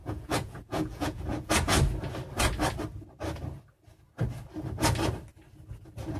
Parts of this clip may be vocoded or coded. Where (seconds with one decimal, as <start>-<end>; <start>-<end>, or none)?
0.0-1.5